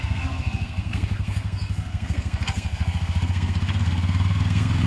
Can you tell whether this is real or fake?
fake